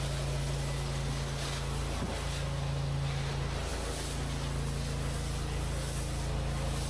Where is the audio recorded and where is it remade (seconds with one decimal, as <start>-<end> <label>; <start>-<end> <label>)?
0.0-6.9 recorded